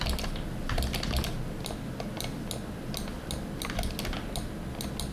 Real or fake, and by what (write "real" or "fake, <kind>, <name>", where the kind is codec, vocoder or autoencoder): real